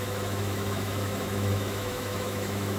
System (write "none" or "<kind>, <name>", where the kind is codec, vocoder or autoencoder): autoencoder, DAC-VAE